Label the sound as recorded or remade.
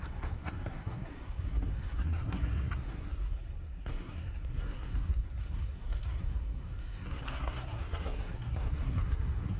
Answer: remade